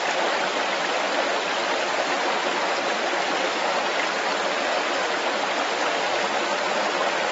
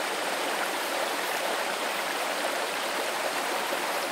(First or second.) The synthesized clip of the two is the second